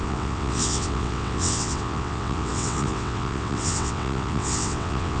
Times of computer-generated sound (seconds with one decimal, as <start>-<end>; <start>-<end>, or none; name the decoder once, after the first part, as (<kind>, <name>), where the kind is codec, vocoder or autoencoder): 0.0-5.2 (vocoder, WaveNeXt)